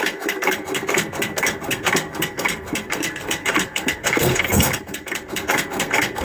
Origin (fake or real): fake